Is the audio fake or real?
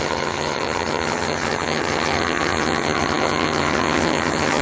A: fake